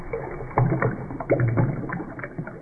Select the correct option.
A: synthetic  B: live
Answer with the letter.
A